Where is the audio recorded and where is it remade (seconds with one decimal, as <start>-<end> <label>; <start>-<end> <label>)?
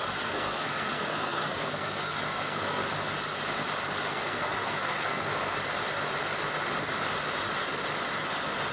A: 0.0-2.8 remade; 2.8-4.1 recorded; 4.1-5.3 remade; 5.3-8.7 recorded